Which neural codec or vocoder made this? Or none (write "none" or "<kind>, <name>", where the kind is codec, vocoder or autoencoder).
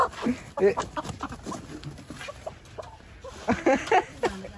none